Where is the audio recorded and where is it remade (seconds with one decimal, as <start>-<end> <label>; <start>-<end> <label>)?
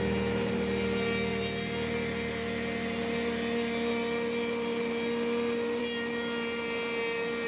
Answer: 0.0-7.5 recorded